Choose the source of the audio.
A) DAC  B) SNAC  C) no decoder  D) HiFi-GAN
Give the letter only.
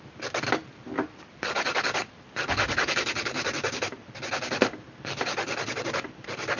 C